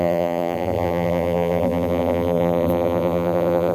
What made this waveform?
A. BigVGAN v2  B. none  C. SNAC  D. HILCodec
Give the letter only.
A